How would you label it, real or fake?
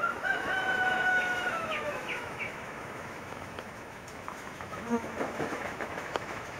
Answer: fake